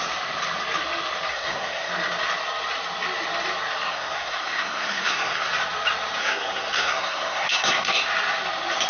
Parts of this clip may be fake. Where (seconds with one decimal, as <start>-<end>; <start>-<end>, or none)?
1.3-1.9; 3.9-5.5; 6.2-8.0